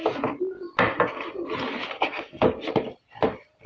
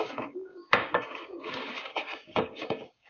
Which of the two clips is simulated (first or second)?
second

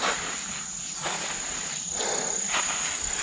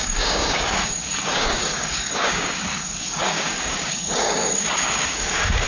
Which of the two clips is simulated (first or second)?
second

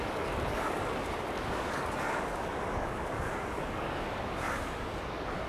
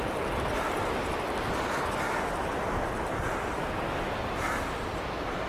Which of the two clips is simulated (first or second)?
first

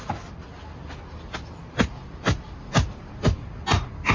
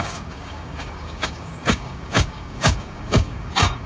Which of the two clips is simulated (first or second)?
second